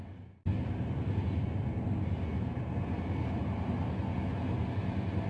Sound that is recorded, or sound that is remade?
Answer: recorded